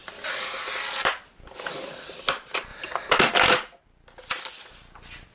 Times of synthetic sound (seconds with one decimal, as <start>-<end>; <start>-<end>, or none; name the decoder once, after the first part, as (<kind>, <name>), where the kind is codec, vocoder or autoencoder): none